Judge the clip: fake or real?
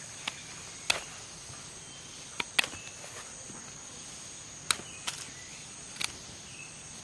real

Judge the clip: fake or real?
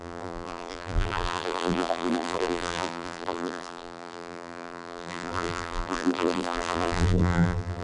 fake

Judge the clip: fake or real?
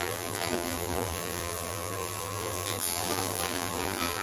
fake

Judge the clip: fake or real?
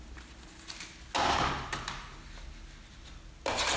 real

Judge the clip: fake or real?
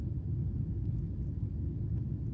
real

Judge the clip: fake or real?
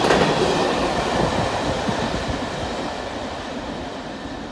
fake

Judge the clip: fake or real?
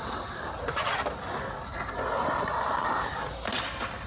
real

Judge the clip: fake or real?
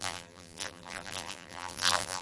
fake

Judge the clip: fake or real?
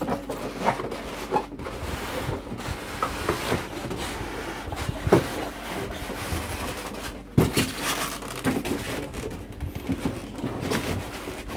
real